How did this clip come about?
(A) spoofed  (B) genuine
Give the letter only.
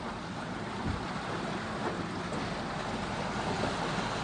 B